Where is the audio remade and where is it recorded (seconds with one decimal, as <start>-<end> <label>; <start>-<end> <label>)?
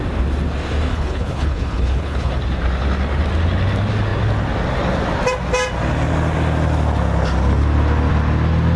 0.0-0.9 recorded; 0.9-2.3 remade; 2.3-8.8 recorded